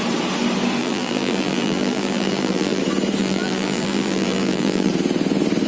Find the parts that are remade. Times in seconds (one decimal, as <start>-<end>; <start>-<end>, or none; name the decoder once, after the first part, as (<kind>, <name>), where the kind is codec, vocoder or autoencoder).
0.8-2.8 (vocoder, BigVGAN v2); 3.2-4.9